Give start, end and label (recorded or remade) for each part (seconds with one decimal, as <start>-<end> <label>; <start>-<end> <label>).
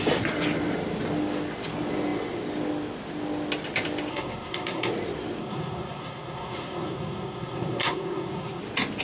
0.0-4.1 recorded; 4.1-4.9 remade; 4.9-5.4 recorded; 5.4-8.6 remade; 8.6-9.0 recorded